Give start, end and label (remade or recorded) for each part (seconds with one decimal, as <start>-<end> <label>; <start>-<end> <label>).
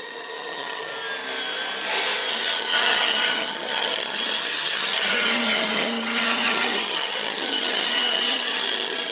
0.0-0.9 remade; 0.9-2.3 recorded; 2.3-9.1 remade